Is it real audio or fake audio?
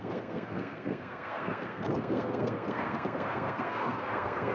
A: fake